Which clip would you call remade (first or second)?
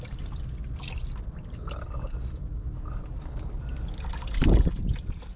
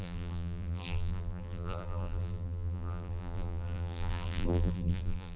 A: second